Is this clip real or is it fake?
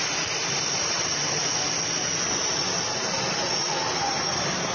real